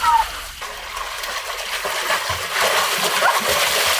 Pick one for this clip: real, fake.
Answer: real